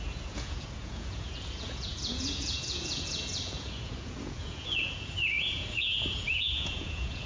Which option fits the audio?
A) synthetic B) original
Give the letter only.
A